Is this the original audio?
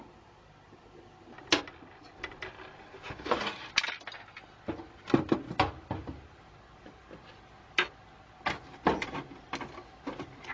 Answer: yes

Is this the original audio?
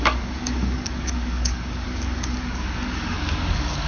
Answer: no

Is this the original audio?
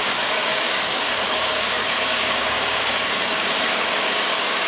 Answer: no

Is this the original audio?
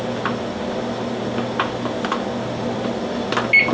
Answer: yes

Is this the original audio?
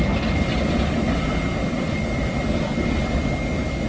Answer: yes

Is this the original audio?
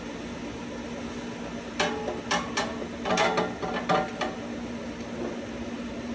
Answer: yes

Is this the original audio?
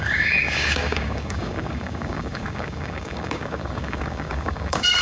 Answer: no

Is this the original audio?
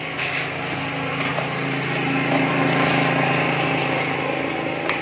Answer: yes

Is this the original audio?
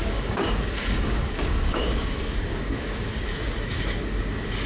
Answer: no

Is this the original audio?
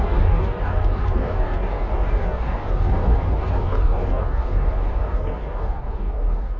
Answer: no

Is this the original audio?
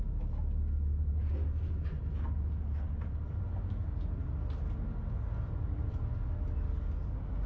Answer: yes